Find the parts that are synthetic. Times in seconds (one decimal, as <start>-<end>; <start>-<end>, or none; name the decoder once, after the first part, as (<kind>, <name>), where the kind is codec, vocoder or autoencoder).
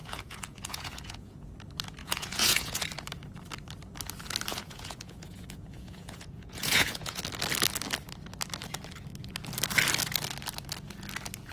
0.0-1.5 (vocoder, Vocos); 2.0-2.8; 4.5-7.2